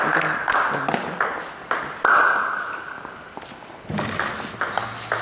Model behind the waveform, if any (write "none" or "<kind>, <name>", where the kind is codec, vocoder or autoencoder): none